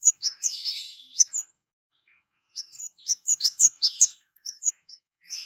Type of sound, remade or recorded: remade